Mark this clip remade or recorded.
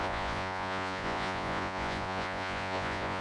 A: remade